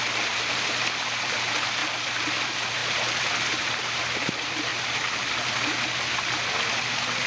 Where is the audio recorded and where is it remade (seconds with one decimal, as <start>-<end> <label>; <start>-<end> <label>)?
0.0-1.8 remade; 1.8-2.4 recorded; 2.4-4.7 remade; 4.7-6.7 recorded; 6.7-7.3 remade